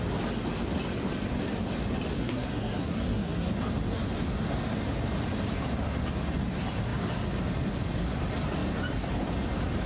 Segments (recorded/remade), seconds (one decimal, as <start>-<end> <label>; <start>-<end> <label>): 0.0-2.2 recorded; 2.2-3.5 remade; 3.5-9.9 recorded